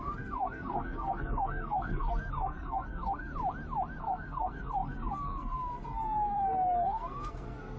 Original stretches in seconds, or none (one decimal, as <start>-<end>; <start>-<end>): 3.3-4.0